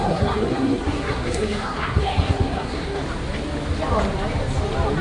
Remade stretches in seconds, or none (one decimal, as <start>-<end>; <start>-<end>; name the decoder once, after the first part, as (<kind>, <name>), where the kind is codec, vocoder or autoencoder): 0.0-3.0 (codec, SNAC)